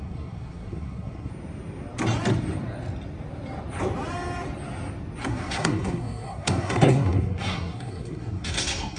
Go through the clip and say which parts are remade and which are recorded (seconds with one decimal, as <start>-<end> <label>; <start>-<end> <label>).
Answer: 0.0-1.3 remade; 1.3-5.2 recorded; 5.2-9.0 remade